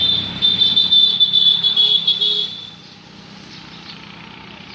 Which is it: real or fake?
real